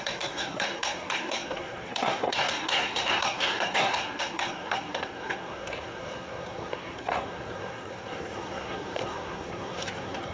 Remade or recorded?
remade